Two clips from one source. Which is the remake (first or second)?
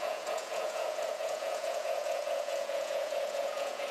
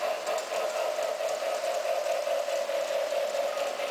first